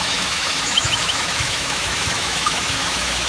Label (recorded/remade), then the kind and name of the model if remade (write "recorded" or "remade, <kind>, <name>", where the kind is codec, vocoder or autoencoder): remade, autoencoder, DAC-VAE